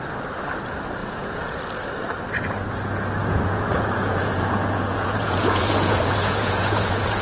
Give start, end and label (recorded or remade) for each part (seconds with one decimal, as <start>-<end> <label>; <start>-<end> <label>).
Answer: 0.0-1.0 recorded; 1.0-1.6 remade; 1.6-3.2 recorded; 3.2-7.2 remade

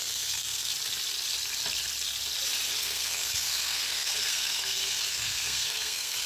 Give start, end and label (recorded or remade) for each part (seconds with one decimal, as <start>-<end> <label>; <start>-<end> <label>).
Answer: 0.0-0.7 remade; 0.7-2.8 recorded; 2.8-6.3 remade

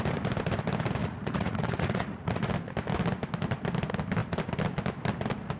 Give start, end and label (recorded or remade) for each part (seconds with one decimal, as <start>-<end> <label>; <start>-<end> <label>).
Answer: 0.0-1.0 recorded; 1.0-2.5 remade; 2.5-5.6 recorded

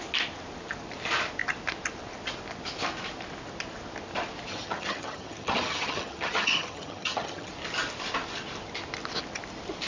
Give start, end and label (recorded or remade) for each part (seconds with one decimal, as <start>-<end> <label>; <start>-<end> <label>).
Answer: 0.0-4.5 recorded; 4.5-7.5 remade; 7.5-9.9 recorded

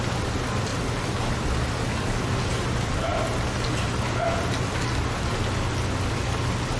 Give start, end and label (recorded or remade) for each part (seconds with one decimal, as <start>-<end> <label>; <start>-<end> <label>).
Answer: 0.0-6.8 recorded

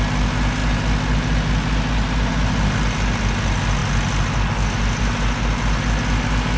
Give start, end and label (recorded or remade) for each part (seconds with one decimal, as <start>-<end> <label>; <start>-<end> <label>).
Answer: 0.0-6.6 recorded

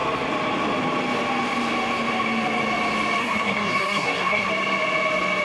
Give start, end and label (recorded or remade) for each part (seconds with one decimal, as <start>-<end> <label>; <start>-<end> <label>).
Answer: 0.0-3.2 recorded; 3.2-4.5 remade; 4.5-5.4 recorded